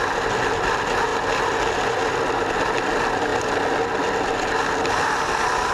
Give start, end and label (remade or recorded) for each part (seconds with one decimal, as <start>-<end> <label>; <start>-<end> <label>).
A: 0.0-5.7 recorded